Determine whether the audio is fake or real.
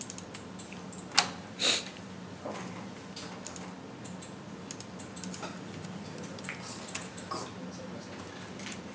real